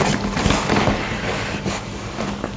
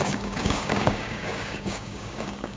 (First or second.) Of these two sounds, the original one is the first